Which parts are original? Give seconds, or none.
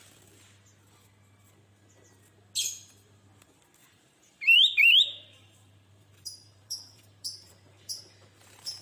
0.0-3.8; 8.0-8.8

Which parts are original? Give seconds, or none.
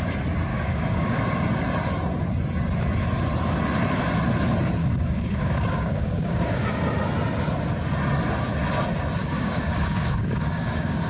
0.0-0.5; 1.2-4.8; 6.8-9.2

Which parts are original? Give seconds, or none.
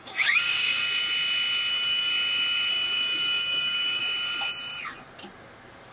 0.8-1.7; 2.1-2.7; 4.0-5.9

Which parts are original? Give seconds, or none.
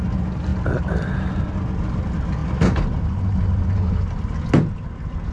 0.0-5.3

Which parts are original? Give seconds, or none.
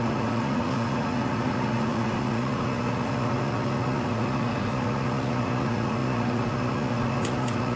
none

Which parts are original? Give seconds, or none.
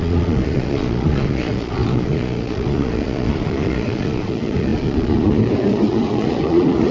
none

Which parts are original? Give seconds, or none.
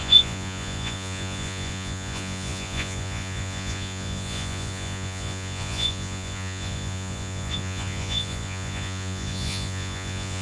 none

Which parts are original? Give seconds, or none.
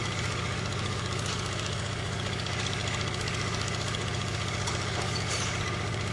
none